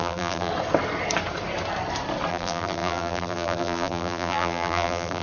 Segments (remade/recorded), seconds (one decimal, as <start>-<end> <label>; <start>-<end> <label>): 0.0-0.5 remade; 0.5-2.3 recorded; 2.3-5.2 remade